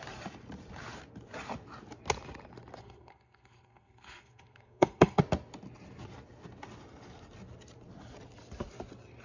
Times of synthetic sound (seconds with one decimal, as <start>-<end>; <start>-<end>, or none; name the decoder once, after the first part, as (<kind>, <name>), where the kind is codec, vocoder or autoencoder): 2.8-5.2 (codec, SNAC)

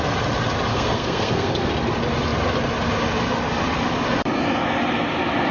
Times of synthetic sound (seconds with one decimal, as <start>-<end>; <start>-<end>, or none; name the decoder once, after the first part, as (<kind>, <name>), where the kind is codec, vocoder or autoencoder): 0.7-1.7 (codec, SNAC)

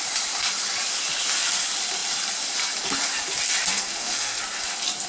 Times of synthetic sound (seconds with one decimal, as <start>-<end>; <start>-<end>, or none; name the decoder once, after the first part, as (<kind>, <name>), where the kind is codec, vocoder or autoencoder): 3.7-4.4 (codec, SNAC)

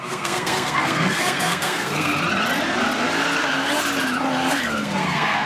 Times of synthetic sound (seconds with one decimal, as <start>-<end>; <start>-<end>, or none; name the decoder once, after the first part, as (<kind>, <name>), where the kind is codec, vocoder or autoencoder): 0.0-2.1 (codec, SNAC); 4.5-5.5

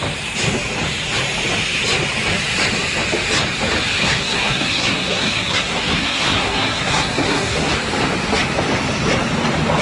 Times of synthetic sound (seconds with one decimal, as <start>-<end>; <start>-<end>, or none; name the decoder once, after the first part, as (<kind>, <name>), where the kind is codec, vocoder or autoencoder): 4.0-7.7 (codec, SNAC)

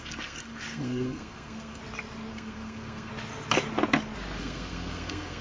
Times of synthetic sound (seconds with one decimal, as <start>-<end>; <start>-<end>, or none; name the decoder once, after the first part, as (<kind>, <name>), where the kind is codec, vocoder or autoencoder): 0.0-1.8 (codec, SNAC); 2.3-3.1; 4.4-5.4

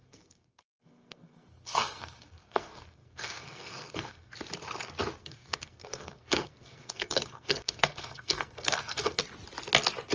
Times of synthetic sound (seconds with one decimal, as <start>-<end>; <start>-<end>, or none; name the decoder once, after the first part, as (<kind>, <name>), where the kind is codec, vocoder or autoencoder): 0.0-4.3 (codec, SNAC); 5.2-9.2